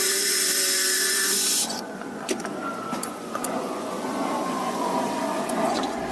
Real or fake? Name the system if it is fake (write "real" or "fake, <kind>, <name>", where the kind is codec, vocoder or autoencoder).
fake, vocoder, Vocos